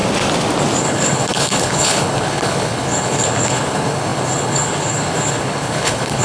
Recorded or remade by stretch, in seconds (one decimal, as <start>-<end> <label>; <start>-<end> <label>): 0.0-0.8 recorded; 0.8-6.2 remade

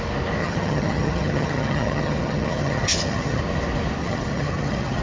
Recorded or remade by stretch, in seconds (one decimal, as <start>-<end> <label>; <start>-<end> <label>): 0.0-0.4 recorded; 0.4-3.4 remade; 3.4-4.0 recorded; 4.0-5.0 remade

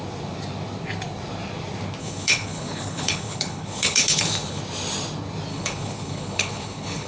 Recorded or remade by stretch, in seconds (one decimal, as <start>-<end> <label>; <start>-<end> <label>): 0.0-2.0 recorded; 2.0-4.6 remade; 4.6-5.5 recorded; 5.5-7.1 remade